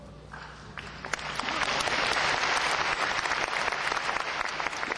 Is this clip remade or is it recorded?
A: recorded